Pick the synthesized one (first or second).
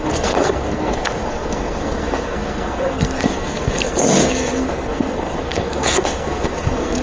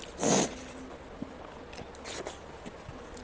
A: first